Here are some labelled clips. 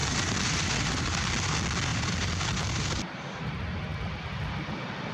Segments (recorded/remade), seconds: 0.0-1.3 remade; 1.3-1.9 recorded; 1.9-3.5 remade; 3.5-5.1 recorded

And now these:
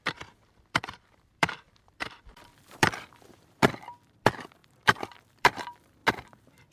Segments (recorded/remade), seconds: 0.0-6.0 remade; 6.0-6.7 recorded

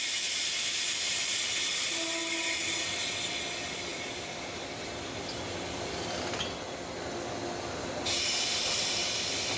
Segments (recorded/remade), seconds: 0.0-3.9 recorded; 3.9-6.3 remade; 6.3-9.6 recorded